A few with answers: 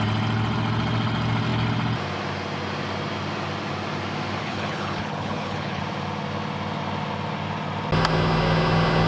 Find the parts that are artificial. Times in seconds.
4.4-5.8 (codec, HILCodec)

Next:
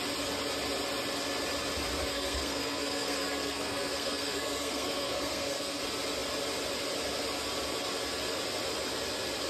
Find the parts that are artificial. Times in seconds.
2.1-5.8 (codec, SNAC)

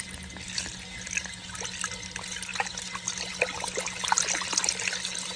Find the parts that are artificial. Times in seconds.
none

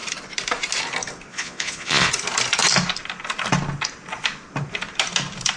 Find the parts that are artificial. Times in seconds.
1.3-2.1 (vocoder, Vocos)

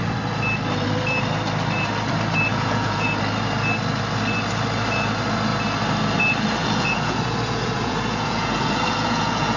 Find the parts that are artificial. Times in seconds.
2.5-3.2 (vocoder, Vocos); 6.6-9.6

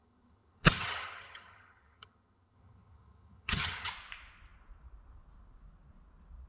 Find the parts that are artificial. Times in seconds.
0.0-3.9 (vocoder, HiFi-GAN)